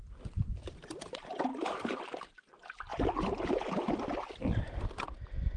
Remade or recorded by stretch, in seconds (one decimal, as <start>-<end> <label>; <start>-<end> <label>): 0.0-5.6 recorded